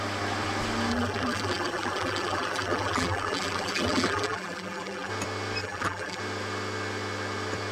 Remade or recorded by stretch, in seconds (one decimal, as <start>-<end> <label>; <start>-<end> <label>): 0.0-0.9 recorded; 0.9-5.1 remade; 5.1-5.6 recorded; 5.6-6.2 remade; 6.2-7.7 recorded